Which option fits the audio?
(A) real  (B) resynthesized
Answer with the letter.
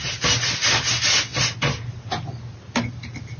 A